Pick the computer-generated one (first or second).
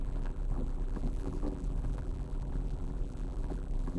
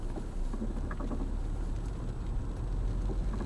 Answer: first